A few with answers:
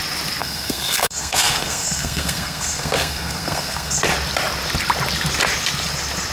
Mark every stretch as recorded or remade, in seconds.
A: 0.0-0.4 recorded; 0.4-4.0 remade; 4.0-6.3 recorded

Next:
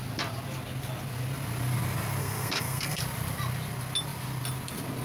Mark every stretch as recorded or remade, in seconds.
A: 0.0-2.2 recorded; 2.2-3.0 remade; 3.0-5.0 recorded